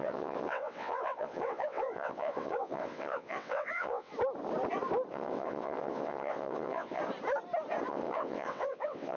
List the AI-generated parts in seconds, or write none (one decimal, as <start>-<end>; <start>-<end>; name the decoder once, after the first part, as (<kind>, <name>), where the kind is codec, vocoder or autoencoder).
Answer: 0.0-4.1 (vocoder, WaveNeXt); 5.1-7.0; 7.9-9.2